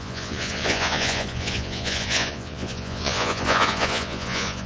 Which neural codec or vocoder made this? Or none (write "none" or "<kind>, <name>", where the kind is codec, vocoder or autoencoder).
vocoder, Vocos